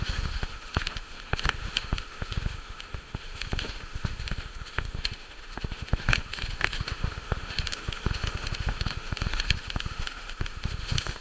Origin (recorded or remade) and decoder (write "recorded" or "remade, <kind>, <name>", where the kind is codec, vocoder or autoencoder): remade, autoencoder, DAC-VAE